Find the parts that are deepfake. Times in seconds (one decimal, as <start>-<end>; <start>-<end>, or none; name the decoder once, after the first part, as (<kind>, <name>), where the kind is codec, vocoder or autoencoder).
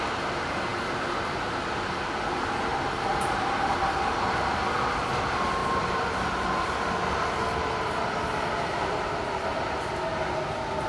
2.7-3.6 (vocoder, BigVGAN v2); 5.6-6.2